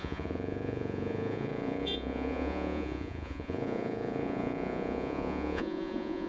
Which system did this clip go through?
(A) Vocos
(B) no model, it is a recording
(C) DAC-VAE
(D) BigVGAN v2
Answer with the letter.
A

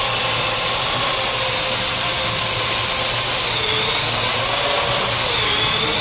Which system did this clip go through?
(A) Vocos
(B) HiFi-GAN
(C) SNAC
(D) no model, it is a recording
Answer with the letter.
D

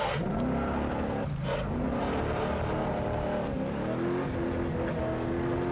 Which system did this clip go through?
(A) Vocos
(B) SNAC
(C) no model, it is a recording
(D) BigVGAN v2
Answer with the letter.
C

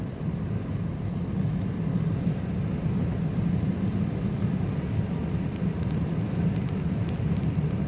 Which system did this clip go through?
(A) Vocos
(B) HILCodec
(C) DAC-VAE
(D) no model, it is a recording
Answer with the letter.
D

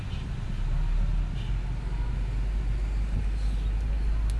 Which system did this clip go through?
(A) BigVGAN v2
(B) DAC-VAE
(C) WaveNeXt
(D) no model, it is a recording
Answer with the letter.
D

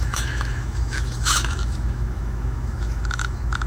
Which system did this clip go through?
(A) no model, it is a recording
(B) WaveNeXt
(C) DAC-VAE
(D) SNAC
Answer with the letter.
C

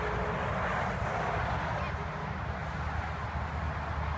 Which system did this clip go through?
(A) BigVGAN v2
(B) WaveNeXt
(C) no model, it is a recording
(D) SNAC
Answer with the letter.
C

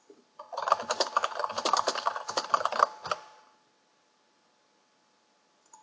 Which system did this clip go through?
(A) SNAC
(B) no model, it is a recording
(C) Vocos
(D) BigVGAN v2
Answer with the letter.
B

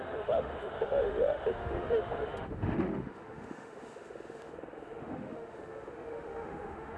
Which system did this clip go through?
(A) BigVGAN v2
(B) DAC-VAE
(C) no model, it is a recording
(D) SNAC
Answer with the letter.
B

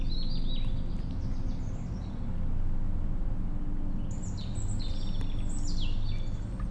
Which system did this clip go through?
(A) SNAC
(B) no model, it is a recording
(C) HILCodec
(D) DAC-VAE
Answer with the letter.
B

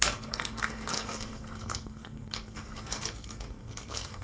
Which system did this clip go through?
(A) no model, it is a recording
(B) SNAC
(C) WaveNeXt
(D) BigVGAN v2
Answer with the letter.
B